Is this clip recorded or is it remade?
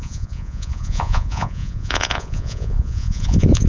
remade